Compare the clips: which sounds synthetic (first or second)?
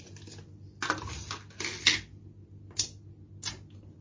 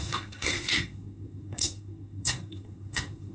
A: second